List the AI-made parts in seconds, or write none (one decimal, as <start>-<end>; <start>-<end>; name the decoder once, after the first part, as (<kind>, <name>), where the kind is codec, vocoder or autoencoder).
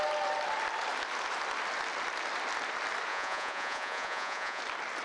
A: 3.1-4.6 (vocoder, Vocos)